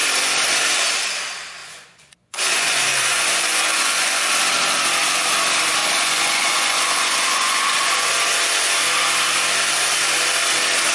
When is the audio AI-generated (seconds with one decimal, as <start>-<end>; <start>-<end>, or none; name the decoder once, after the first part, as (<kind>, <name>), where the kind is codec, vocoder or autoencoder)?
1.6-4.2 (vocoder, Vocos); 5.8-8.1